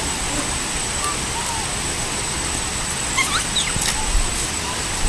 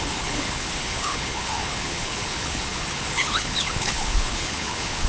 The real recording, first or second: first